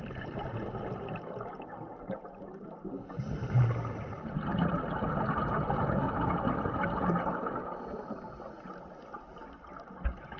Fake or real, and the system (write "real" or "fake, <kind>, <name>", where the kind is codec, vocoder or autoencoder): real